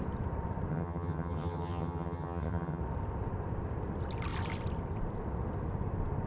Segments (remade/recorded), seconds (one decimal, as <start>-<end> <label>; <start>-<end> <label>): 0.0-0.7 recorded; 0.7-2.8 remade; 2.8-6.3 recorded